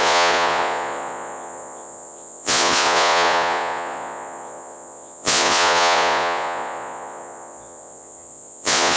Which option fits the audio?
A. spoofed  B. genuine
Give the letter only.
A